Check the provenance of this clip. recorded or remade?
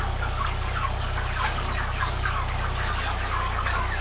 remade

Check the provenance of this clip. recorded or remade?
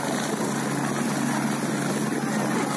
recorded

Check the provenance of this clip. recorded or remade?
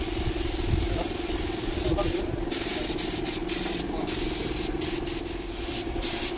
recorded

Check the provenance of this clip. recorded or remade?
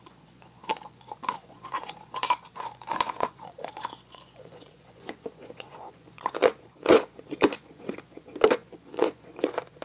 remade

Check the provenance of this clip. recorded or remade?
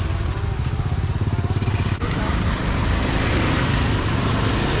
recorded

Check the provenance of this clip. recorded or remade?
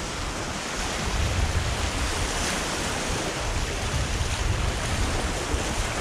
recorded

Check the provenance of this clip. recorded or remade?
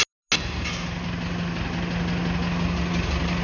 recorded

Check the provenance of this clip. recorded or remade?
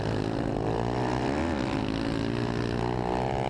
recorded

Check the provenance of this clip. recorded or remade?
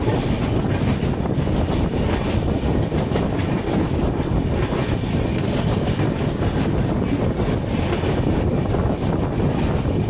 recorded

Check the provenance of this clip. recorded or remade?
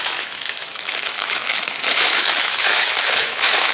remade